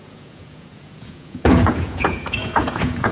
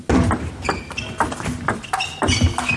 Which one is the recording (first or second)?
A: second